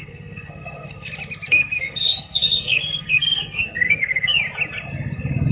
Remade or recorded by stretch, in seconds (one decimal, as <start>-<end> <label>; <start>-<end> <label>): 0.0-1.1 remade; 1.1-1.5 recorded; 1.5-4.4 remade; 4.4-5.5 recorded